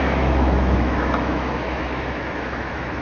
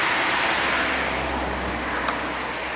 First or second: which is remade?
first